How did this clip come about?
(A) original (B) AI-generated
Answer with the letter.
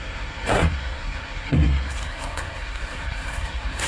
B